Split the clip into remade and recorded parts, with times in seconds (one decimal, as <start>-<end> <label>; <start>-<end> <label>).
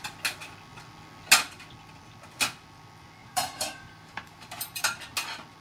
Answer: 0.0-3.2 recorded; 3.2-5.0 remade; 5.0-5.6 recorded